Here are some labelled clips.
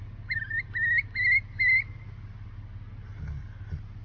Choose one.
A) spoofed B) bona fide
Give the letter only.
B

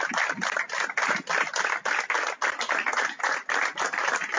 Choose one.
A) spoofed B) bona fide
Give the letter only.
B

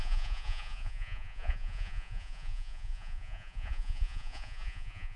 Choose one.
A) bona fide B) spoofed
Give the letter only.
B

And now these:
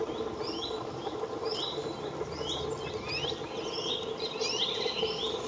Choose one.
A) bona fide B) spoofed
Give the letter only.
A